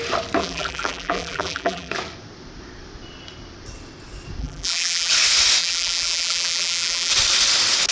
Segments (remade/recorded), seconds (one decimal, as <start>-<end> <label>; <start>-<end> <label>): 0.0-0.4 recorded; 0.4-1.9 remade; 1.9-4.4 recorded; 4.4-5.1 remade; 5.1-5.6 recorded; 5.6-7.1 remade; 7.1-7.9 recorded